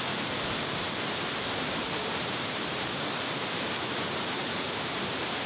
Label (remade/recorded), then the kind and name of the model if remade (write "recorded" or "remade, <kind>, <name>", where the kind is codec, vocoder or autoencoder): remade, vocoder, BigVGAN v2